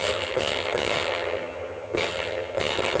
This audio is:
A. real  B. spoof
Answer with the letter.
B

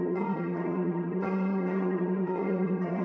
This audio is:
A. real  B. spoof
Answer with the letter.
B